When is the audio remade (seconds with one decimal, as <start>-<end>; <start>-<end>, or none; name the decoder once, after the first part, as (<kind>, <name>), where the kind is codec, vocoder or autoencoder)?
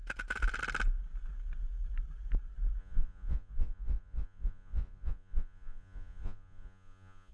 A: 2.8-7.3 (vocoder, Vocos)